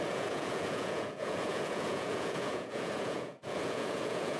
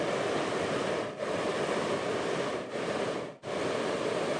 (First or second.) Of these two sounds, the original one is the second